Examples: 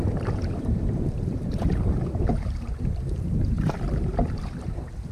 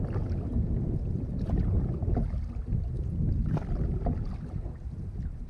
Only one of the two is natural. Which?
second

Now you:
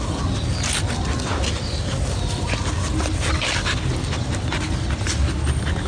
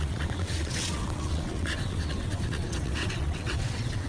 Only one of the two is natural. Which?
first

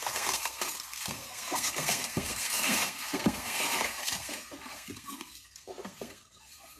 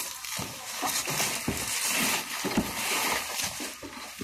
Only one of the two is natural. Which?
second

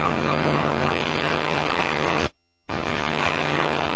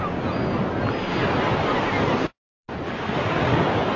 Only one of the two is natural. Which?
second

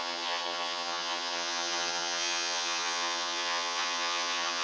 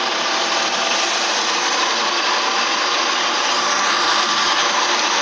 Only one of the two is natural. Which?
second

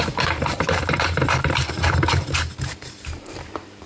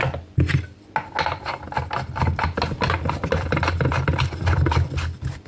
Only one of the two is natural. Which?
second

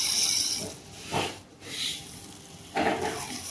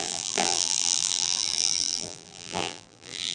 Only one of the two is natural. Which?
first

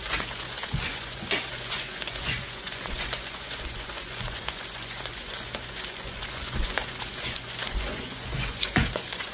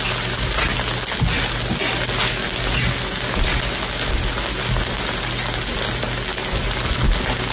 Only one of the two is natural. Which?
second